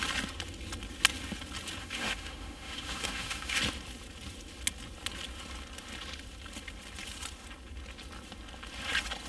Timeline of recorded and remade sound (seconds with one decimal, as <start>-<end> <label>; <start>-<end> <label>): 0.0-1.8 recorded; 1.8-3.6 remade; 3.6-9.3 recorded